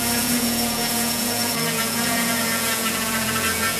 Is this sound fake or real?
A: fake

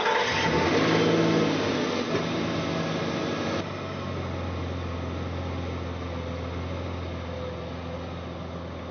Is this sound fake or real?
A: real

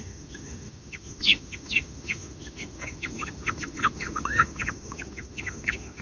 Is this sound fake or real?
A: fake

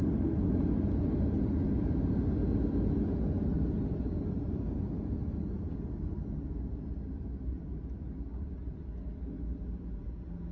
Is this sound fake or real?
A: real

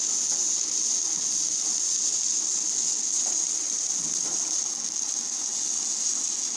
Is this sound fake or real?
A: real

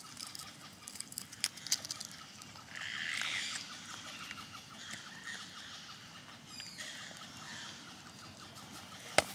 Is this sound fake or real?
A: real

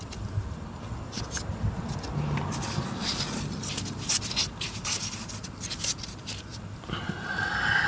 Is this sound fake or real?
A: real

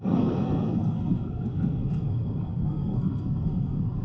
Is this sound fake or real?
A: fake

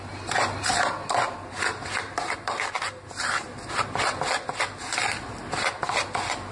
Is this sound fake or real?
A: real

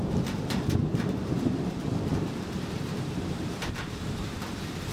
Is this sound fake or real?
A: fake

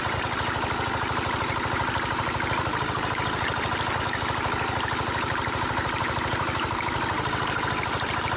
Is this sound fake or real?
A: real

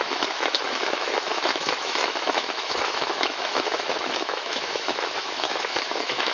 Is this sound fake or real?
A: fake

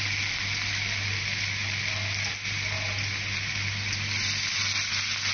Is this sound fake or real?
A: real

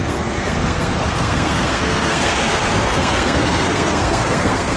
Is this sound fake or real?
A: fake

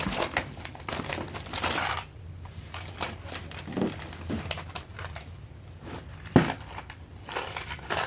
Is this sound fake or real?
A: fake